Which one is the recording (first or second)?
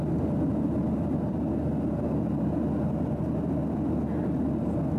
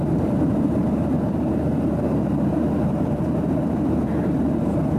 first